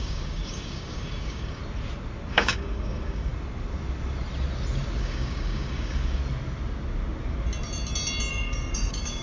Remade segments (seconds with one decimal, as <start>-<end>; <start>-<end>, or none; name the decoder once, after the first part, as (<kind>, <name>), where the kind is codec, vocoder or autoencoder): 0.0-1.6 (codec, DAC); 2.3-3.3; 5.0-6.2; 8.3-9.2